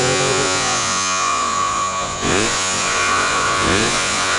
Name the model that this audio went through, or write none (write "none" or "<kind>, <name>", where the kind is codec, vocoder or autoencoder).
vocoder, Vocos